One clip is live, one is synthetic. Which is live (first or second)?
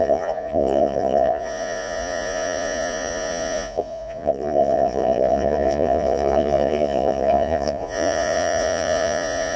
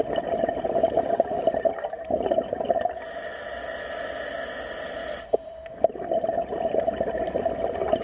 second